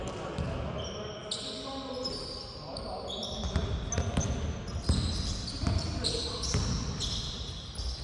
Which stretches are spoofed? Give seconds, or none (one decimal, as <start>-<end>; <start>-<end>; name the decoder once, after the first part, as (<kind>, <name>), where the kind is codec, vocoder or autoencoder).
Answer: none